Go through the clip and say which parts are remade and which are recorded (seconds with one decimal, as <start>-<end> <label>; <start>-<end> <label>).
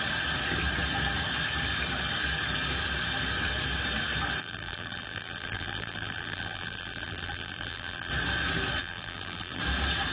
0.0-4.4 recorded; 4.4-8.1 remade; 8.1-8.8 recorded; 8.8-9.6 remade; 9.6-10.1 recorded